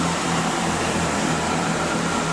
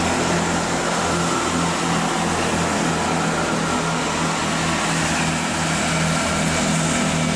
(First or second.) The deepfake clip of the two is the first